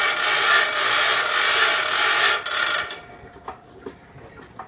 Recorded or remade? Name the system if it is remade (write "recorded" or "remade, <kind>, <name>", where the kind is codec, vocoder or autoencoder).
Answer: recorded